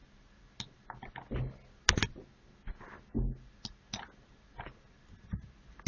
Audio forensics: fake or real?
real